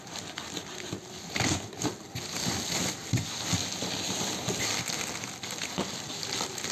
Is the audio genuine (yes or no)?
yes